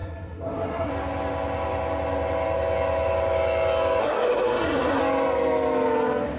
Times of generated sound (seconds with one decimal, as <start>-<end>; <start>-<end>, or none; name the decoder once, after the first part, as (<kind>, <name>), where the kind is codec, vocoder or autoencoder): 0.0-0.9 (codec, SNAC); 4.0-5.0

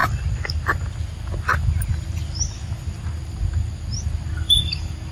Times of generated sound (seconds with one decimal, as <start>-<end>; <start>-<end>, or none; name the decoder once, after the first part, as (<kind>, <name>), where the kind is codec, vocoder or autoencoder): none

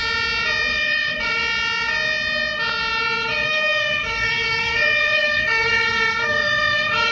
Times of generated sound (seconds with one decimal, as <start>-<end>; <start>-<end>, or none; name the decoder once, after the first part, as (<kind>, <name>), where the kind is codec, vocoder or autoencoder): 0.7-1.4 (codec, DAC); 3.4-7.1

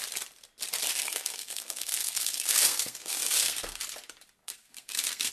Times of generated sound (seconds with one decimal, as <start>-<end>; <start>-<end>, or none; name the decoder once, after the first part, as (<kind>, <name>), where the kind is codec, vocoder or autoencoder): 0.9-3.8 (codec, SNAC); 4.4-5.3

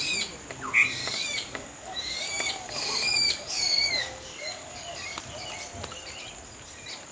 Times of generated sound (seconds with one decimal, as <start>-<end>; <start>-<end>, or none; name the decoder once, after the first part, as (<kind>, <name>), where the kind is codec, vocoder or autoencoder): 1.0-5.2 (codec, DAC)

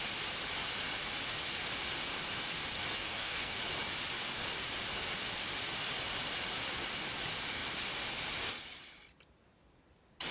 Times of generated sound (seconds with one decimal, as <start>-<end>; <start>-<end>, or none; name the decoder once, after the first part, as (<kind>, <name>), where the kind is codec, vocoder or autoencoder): 3.0-3.6 (codec, SNAC)